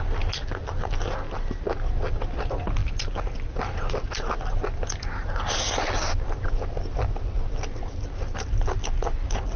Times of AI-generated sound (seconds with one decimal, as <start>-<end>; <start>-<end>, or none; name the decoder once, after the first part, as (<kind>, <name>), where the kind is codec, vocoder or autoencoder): none